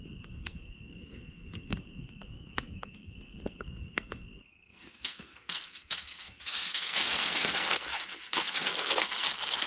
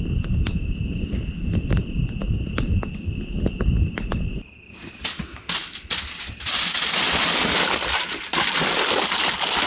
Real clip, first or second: second